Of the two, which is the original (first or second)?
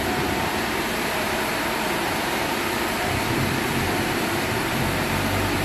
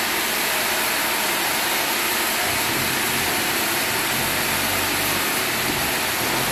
second